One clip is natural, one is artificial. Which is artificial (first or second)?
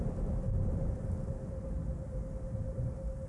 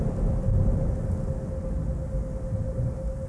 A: first